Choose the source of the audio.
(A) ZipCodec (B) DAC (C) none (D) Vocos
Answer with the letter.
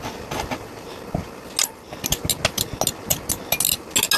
C